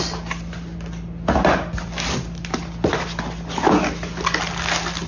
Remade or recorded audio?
recorded